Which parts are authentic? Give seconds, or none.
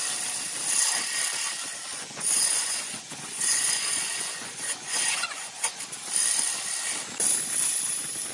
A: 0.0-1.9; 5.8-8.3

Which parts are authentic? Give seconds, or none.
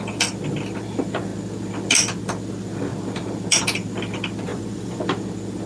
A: 0.0-4.5; 5.0-5.7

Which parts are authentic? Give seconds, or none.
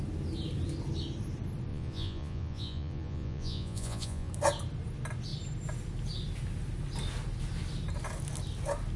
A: 0.0-1.7; 4.3-9.0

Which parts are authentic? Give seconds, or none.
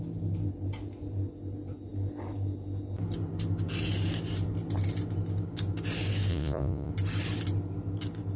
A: 0.0-6.3; 6.9-8.4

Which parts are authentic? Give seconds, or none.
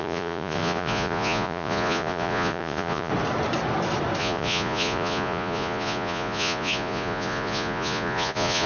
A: 3.1-4.2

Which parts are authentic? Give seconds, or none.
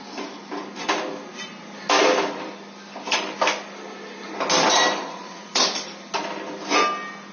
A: 0.0-5.0; 5.5-7.3